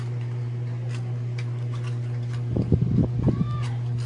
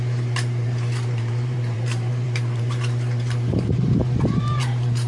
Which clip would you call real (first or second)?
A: first